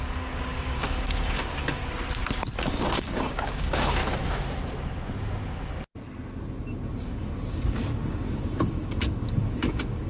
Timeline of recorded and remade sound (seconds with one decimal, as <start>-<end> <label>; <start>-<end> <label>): 0.0-1.8 remade; 1.8-2.6 recorded; 2.6-4.0 remade; 4.0-7.0 recorded; 7.0-10.1 remade